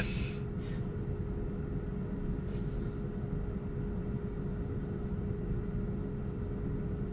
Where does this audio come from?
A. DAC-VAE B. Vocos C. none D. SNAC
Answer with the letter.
C